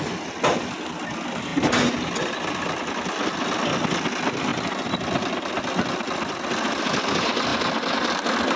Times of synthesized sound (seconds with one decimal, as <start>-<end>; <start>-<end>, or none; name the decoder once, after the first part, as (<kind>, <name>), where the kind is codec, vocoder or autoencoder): none